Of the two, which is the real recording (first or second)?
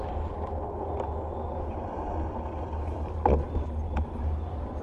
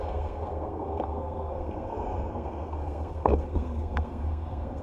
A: first